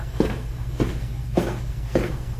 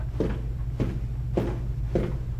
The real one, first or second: second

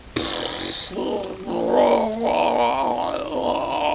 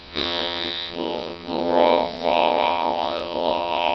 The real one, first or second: first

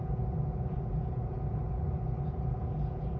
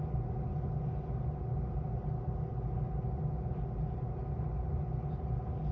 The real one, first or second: second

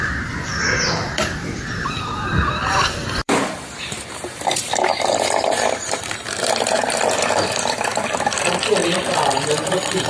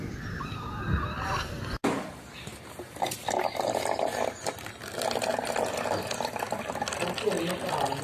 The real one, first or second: second